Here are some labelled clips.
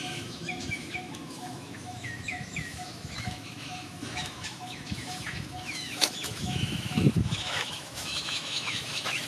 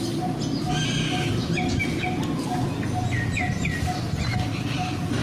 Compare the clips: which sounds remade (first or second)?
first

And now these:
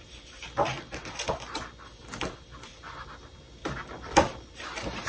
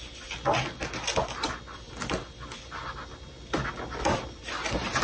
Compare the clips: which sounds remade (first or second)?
first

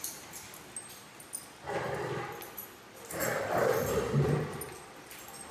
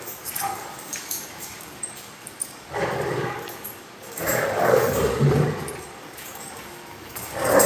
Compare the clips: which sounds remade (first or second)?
second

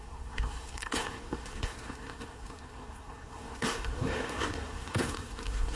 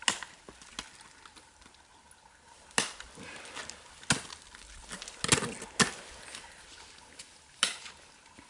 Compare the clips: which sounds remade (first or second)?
first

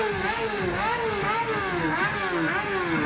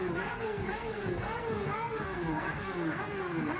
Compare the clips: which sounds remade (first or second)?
second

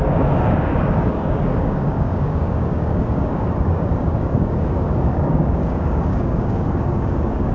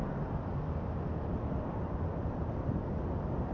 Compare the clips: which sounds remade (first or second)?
first